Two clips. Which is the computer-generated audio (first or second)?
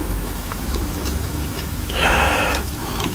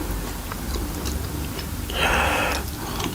first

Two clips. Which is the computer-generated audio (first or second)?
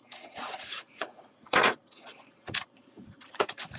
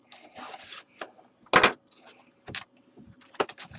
first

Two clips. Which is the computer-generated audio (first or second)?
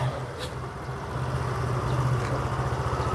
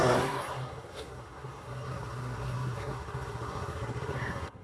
second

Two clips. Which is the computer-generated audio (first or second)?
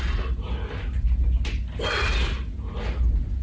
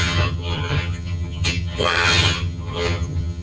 second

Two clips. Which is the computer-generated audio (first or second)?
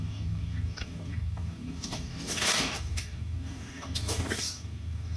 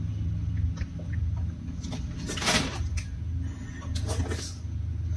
first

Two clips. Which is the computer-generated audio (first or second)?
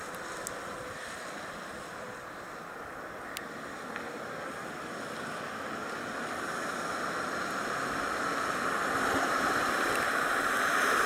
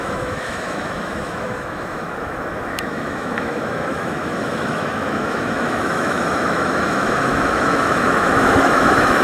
second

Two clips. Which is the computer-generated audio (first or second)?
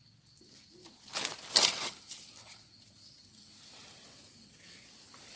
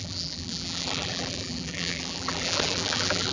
second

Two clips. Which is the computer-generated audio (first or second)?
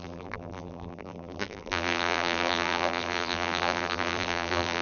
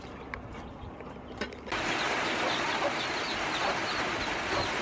first